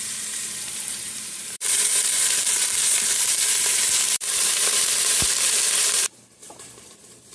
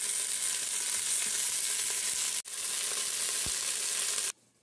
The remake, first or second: first